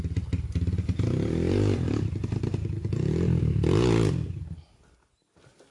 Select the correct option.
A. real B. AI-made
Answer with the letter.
A